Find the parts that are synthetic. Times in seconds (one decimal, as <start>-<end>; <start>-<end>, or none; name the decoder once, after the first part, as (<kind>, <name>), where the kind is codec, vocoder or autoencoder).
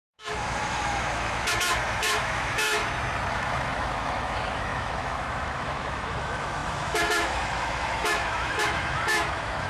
0.0-2.8 (autoencoder, DAC-VAE); 3.3-9.7